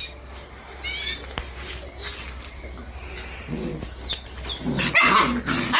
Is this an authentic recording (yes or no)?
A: yes